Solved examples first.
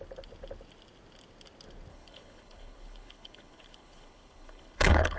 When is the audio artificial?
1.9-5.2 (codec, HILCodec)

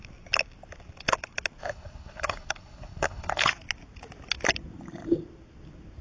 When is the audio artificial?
1.6-3.5 (codec, HILCodec)

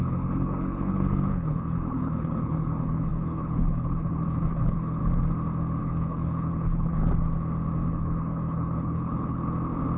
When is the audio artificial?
0.0-5.0 (codec, HILCodec); 5.8-7.0; 7.9-9.4

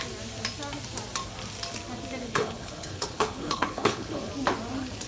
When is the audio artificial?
2.2-4.3 (codec, HILCodec)